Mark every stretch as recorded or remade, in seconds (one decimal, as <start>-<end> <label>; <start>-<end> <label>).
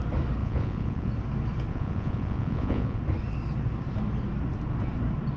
0.0-0.4 recorded; 0.4-1.1 remade; 1.1-1.7 recorded; 1.7-3.0 remade; 3.0-5.4 recorded